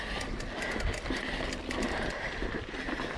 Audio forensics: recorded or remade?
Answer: recorded